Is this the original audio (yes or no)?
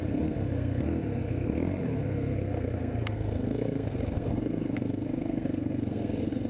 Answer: no